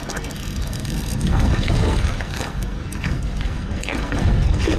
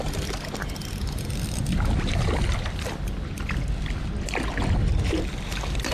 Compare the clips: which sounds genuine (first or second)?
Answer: second